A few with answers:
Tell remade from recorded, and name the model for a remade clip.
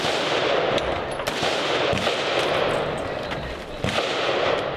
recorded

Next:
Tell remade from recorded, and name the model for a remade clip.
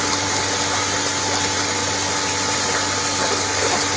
remade, vocoder, BigVGAN v2